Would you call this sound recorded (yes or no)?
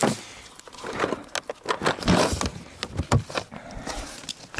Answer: yes